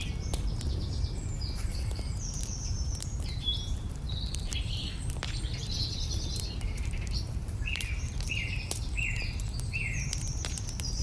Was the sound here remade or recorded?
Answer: remade